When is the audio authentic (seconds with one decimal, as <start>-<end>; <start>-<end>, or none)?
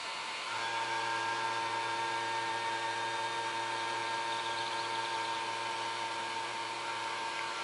none